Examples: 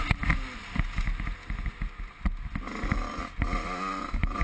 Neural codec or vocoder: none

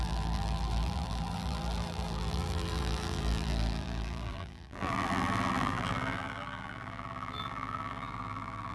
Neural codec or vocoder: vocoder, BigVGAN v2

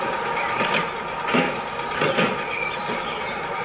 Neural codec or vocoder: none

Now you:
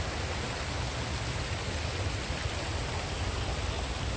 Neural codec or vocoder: none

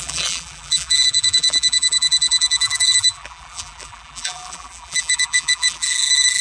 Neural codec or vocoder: vocoder, BigVGAN v2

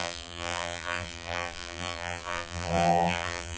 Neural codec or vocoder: vocoder, BigVGAN v2